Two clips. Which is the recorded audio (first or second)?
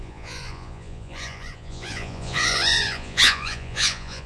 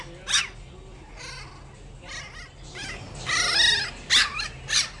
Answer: second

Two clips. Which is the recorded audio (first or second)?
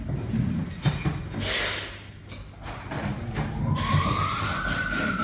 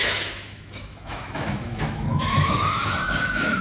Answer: first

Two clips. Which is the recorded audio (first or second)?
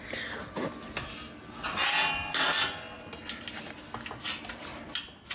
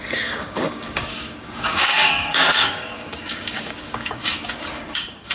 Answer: first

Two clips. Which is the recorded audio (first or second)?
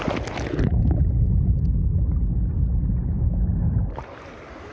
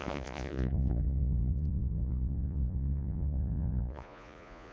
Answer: first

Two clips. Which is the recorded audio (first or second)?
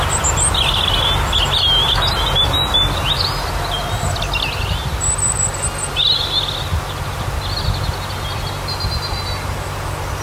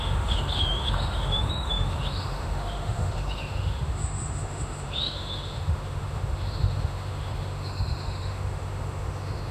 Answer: first